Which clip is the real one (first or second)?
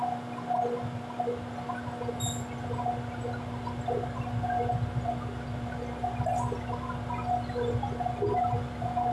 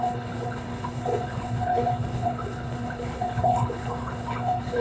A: first